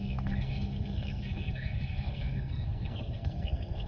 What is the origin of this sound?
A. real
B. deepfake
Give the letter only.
B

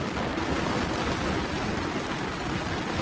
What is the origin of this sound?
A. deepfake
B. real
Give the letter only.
B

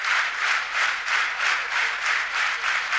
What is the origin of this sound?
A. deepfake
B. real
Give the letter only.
B